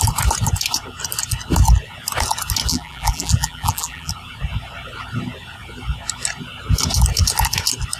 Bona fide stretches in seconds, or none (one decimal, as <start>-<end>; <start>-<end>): 0.0-2.7; 4.1-8.0